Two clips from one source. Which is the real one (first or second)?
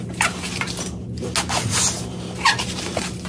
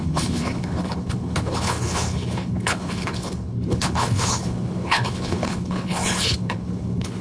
first